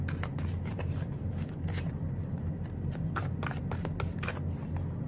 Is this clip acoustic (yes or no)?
yes